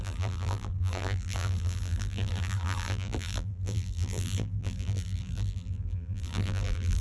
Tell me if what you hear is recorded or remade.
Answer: remade